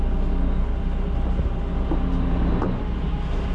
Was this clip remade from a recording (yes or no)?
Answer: no